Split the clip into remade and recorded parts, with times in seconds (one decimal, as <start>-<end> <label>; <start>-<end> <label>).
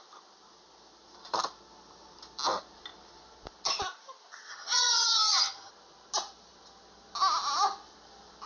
0.0-4.5 recorded; 4.5-5.7 remade; 5.7-8.5 recorded